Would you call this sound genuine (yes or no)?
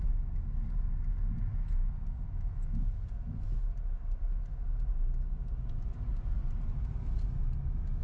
yes